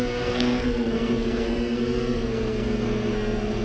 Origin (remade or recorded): remade